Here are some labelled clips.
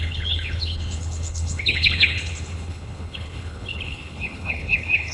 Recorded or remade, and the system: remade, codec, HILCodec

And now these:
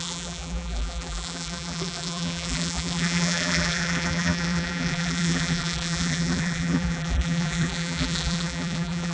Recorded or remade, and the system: remade, vocoder, BigVGAN v2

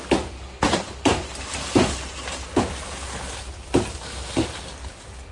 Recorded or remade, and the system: recorded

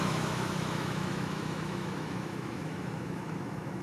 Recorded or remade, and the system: remade, autoencoder, DAC-VAE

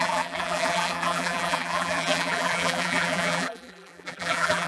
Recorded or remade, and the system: remade, vocoder, BigVGAN v2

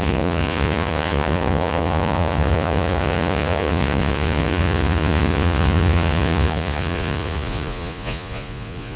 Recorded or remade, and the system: remade, vocoder, Vocos